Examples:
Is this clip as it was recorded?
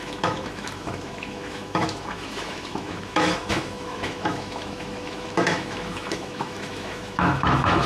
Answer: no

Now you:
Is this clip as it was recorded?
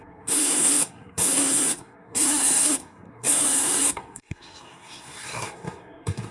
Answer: no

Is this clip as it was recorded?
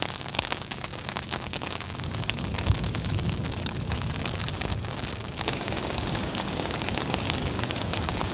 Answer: no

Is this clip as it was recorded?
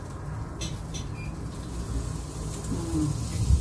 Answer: yes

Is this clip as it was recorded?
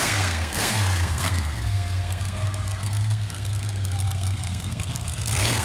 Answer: no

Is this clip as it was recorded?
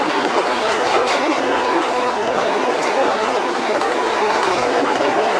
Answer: no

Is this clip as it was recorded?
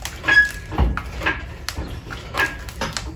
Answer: yes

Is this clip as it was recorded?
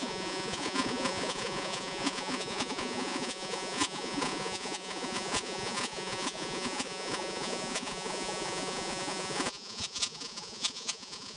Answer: no